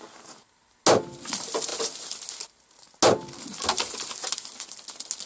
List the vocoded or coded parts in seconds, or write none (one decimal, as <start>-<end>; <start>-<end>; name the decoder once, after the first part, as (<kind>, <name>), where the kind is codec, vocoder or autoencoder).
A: none

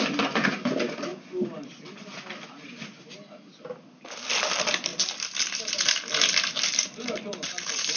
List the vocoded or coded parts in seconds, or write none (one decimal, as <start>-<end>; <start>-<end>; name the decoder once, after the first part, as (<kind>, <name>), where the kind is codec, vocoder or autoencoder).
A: none

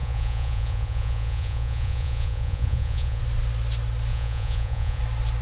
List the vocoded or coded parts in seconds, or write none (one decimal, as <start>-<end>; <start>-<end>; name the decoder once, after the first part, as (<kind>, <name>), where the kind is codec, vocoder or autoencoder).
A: 0.0-3.2 (vocoder, Vocos); 4.1-5.0

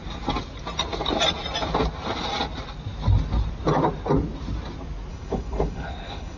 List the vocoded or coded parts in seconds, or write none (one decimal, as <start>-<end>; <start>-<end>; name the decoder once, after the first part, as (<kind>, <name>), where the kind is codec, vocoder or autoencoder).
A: 5.1-6.4 (codec, HILCodec)

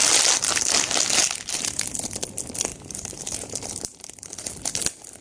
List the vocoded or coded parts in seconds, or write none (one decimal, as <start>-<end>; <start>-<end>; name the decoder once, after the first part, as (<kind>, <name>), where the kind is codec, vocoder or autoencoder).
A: 0.0-0.7 (vocoder, BigVGAN v2); 2.7-4.5

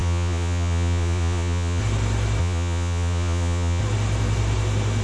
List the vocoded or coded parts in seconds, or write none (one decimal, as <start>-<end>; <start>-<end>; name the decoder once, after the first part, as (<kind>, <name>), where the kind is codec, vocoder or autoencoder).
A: 0.0-1.8 (vocoder, Vocos); 2.4-3.8